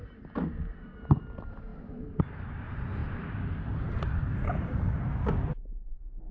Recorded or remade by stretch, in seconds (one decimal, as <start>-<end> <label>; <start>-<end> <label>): 0.0-6.3 recorded